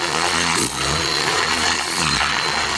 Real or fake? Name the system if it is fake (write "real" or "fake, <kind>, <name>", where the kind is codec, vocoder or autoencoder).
fake, vocoder, Vocos